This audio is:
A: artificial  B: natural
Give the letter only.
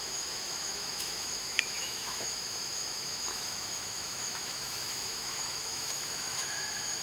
A